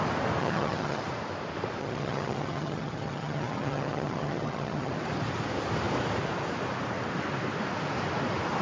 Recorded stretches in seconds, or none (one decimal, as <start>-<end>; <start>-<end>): 0.0-0.4; 1.0-1.8; 4.9-8.6